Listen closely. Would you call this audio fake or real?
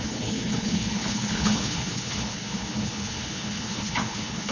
fake